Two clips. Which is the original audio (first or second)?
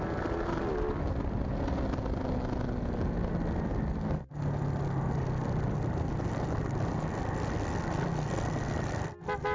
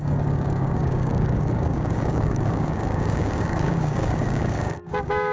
first